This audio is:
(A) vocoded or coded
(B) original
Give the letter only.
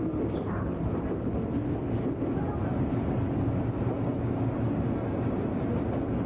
B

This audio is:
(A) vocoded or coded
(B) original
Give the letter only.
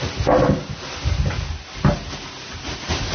B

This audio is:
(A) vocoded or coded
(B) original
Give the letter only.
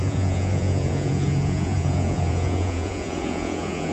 A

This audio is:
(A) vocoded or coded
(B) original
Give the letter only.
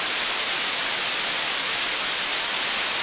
B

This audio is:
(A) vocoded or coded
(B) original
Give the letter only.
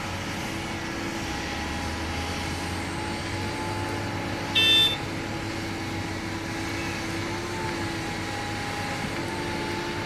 B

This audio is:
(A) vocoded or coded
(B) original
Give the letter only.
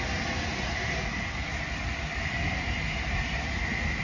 B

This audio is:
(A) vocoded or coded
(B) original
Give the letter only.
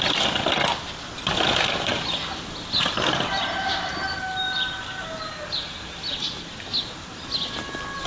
B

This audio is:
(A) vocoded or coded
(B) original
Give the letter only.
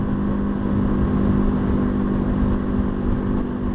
B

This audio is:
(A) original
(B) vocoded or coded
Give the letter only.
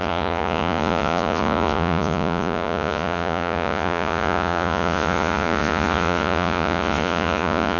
B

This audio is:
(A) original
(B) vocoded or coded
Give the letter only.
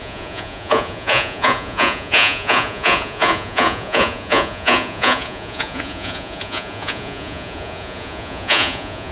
B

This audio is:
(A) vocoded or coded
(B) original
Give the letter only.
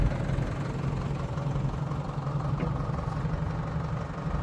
B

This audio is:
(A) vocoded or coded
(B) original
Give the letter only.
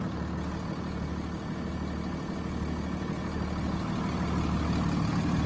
B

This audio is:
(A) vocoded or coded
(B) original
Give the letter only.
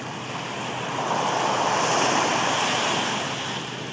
B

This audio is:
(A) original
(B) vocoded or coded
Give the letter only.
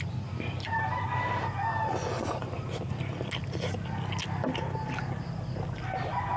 A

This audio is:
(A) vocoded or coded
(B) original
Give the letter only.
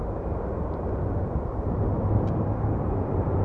B